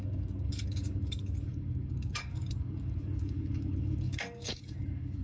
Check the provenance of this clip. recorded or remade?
remade